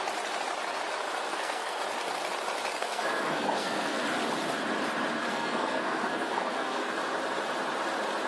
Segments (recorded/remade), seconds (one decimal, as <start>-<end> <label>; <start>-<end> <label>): 0.0-1.3 recorded; 1.3-1.8 remade; 1.8-2.8 recorded; 2.8-4.0 remade; 4.0-5.2 recorded; 5.2-6.9 remade; 6.9-8.3 recorded